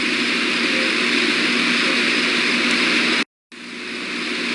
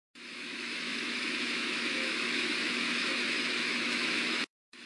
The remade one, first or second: second